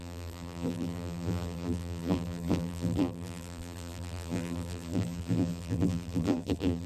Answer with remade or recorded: remade